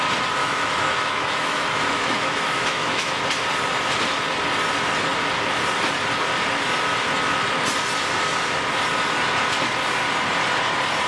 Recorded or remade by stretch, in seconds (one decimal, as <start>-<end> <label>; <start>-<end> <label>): 0.0-0.4 recorded; 0.4-3.2 remade; 3.2-11.1 recorded